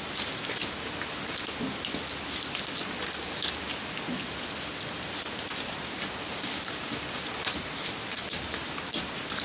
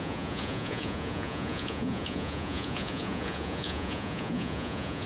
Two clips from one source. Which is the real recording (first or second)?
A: first